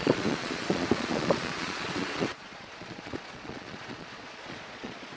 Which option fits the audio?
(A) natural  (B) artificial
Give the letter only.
B